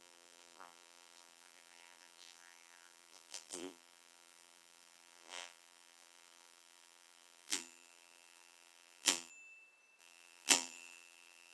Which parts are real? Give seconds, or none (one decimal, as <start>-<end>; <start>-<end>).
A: 9.3-10.0